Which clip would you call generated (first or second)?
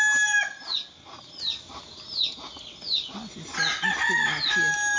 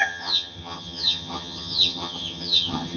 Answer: second